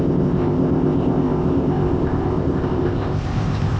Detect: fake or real fake